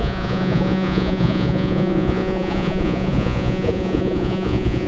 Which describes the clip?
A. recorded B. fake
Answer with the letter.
B